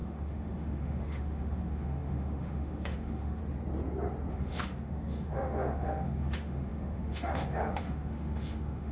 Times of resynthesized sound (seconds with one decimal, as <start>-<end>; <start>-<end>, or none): 0.0-3.4; 4.3-8.9